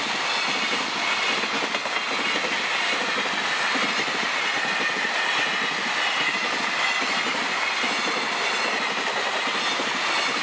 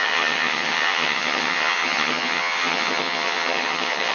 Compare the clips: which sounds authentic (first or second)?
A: first